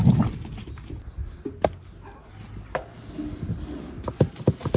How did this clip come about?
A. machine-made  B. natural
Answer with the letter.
B